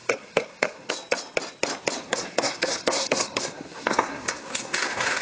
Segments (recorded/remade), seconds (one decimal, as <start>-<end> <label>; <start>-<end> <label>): 0.0-0.9 remade; 0.9-2.0 recorded; 2.0-5.2 remade